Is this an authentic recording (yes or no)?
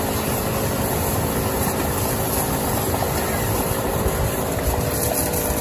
yes